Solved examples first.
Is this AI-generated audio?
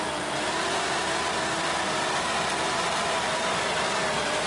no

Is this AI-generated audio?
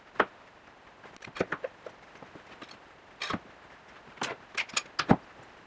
no